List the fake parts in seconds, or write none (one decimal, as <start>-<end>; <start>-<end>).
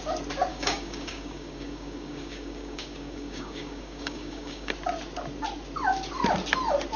0.5-4.7